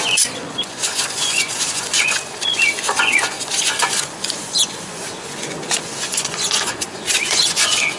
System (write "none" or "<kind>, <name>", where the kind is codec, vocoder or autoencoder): vocoder, Vocos